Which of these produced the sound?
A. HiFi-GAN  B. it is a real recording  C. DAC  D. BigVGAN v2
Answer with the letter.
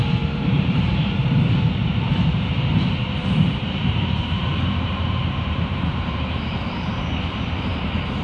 D